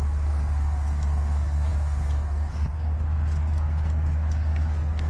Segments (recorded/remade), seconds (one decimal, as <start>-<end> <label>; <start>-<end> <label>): 0.0-5.1 remade